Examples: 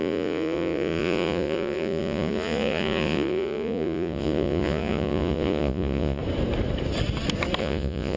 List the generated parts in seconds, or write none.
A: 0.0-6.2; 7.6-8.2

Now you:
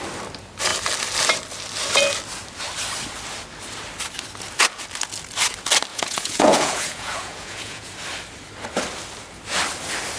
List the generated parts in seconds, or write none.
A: 5.9-7.9

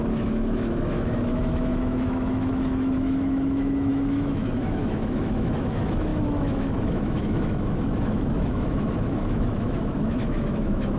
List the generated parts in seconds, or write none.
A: 0.0-11.0

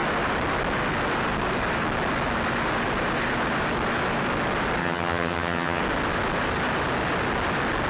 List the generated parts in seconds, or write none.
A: 4.8-5.8

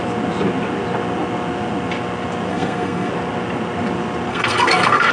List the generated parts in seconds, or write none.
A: 2.5-3.1; 4.3-5.1

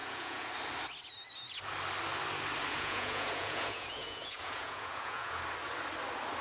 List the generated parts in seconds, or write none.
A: 0.0-0.5; 2.7-5.4

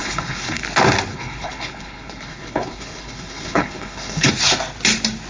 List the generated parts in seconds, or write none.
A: 0.0-0.6; 1.1-4.3

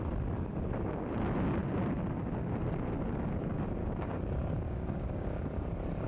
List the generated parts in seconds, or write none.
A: 3.8-5.4